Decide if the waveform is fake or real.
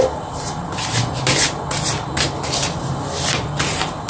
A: real